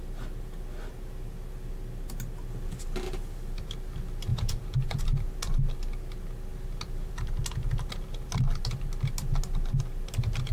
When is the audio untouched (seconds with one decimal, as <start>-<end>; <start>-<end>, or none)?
0.0-4.3; 5.0-10.5